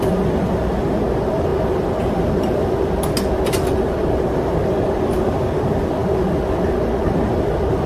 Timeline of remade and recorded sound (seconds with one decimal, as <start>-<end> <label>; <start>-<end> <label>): 0.0-7.9 recorded